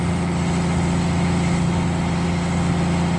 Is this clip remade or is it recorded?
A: recorded